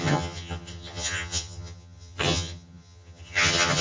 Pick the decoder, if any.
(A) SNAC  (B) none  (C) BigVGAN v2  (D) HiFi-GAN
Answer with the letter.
D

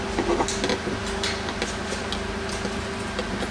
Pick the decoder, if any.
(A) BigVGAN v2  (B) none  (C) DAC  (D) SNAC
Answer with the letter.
B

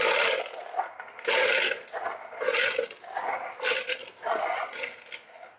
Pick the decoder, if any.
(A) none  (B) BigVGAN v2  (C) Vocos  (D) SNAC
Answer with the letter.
A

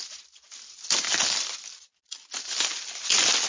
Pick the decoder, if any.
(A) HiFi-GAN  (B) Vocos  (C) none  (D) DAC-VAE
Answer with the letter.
C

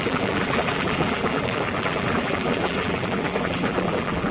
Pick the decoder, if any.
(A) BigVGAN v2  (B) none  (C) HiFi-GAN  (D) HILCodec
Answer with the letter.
A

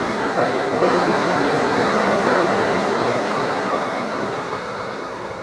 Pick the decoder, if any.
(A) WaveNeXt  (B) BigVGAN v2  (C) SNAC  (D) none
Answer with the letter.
C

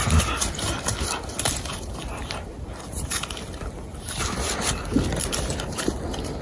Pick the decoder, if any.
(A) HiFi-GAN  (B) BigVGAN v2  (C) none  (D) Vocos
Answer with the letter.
C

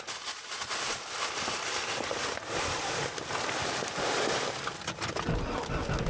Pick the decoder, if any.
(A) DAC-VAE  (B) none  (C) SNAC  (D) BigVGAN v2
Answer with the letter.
B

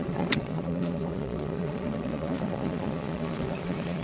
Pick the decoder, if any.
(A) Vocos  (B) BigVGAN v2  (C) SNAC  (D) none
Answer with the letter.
A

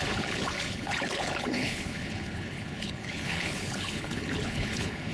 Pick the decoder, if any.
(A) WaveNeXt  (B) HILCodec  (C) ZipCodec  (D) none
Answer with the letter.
B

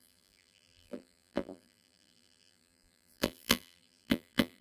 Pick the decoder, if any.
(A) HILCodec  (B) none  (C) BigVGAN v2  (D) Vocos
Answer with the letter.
C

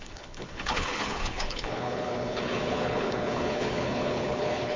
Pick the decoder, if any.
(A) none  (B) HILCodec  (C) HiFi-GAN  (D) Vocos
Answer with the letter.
B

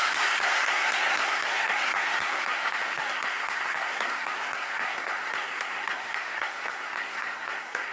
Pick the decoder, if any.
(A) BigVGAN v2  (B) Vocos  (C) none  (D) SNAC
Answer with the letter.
D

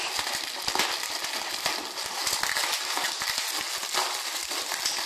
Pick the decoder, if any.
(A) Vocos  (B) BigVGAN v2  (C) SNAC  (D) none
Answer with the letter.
D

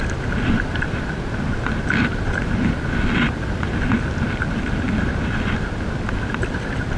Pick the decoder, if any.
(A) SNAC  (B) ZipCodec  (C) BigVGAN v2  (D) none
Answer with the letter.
D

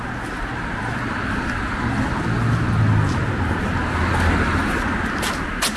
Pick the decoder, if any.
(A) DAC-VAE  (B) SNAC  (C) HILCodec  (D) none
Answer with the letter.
D